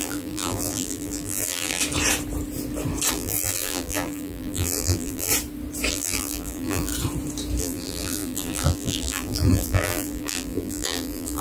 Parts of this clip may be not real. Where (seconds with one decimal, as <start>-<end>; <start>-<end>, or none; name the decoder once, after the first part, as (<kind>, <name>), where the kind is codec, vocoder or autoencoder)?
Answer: 0.0-1.8 (vocoder, BigVGAN v2); 3.1-5.3; 5.9-6.9; 7.6-11.4